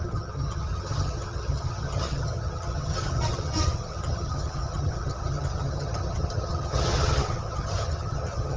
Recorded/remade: remade